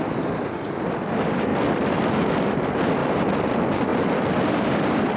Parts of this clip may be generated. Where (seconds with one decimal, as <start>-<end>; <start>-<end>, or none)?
3.0-3.5